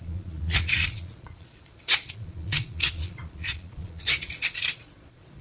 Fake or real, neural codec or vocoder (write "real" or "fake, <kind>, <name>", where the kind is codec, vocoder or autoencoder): fake, vocoder, Vocos